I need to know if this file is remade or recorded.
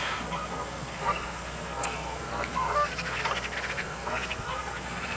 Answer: remade